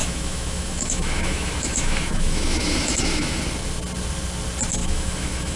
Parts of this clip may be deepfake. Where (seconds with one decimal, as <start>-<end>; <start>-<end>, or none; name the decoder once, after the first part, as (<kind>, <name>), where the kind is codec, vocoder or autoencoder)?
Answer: 0.0-3.4 (autoencoder, DAC-VAE); 4.8-5.6